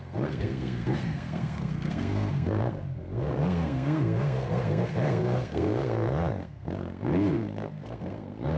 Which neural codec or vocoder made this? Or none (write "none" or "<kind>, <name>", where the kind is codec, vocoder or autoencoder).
codec, SNAC